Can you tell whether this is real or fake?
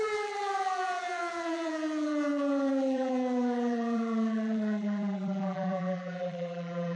fake